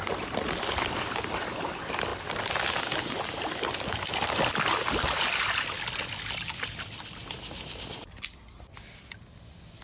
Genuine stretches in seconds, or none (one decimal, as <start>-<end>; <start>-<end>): 0.0-9.8